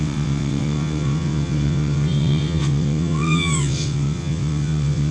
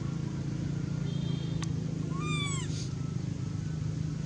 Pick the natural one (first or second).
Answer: second